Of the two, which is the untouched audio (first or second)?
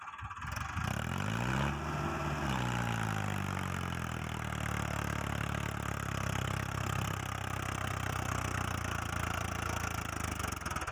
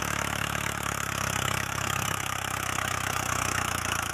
first